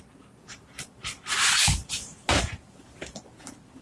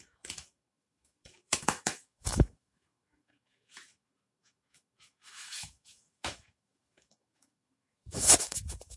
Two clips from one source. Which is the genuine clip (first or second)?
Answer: first